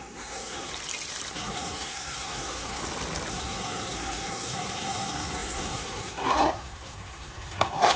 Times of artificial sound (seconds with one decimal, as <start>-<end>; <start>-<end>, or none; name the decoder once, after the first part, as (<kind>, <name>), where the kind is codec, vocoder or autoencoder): 0.0-0.7 (codec, SNAC); 1.3-2.8; 3.3-8.0

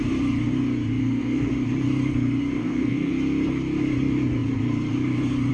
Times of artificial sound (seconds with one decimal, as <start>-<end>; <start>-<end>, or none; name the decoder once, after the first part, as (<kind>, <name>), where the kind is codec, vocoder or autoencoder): 1.0-1.5 (codec, SNAC); 2.6-3.1